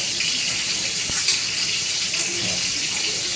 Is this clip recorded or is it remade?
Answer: recorded